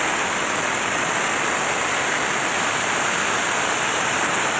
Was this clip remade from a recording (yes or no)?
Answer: no